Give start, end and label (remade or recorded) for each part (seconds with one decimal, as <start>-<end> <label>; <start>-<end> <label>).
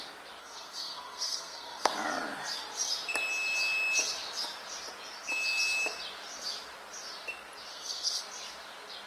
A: 0.0-0.4 recorded; 0.4-1.9 remade; 1.9-7.7 recorded; 7.7-8.2 remade; 8.2-9.1 recorded